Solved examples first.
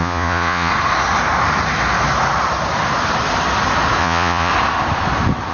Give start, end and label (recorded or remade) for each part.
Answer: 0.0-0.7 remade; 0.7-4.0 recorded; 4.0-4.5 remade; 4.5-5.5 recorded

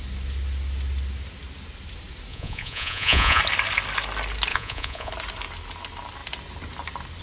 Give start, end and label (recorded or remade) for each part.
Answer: 0.0-2.3 recorded; 2.3-3.4 remade; 3.4-4.5 recorded; 4.5-5.1 remade; 5.1-7.2 recorded

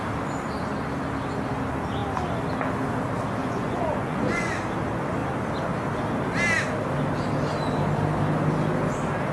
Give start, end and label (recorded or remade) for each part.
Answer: 0.0-3.4 recorded; 3.4-4.5 remade; 4.5-9.3 recorded

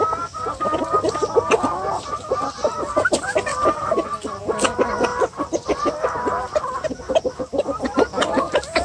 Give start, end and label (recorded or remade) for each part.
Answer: 0.0-8.8 recorded

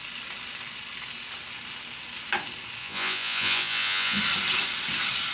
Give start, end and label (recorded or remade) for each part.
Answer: 0.0-2.8 recorded; 2.8-4.2 remade; 4.2-5.3 recorded

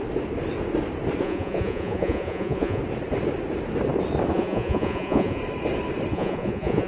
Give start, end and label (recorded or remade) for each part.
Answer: 0.0-1.2 recorded; 1.2-2.8 remade; 2.8-4.3 recorded; 4.3-5.4 remade; 5.4-6.1 recorded; 6.1-6.9 remade